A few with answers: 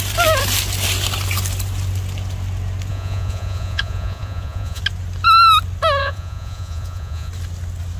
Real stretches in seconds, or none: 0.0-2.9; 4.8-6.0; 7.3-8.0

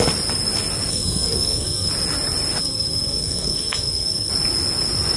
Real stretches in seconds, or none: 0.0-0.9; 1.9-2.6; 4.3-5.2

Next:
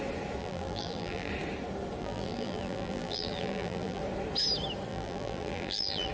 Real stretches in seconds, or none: 0.0-0.4; 1.3-2.0; 4.0-4.9

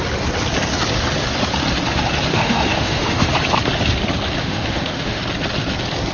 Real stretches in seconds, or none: 0.0-2.3; 3.3-4.4; 5.2-6.1

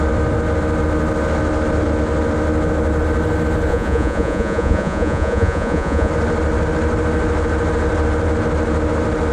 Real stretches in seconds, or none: 0.0-3.7; 6.1-9.3